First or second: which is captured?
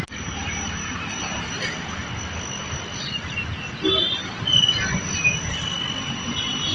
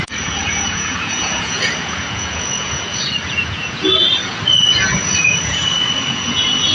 first